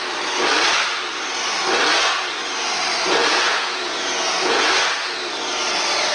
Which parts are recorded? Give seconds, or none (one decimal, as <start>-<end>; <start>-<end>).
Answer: 0.0-3.2; 4.7-6.1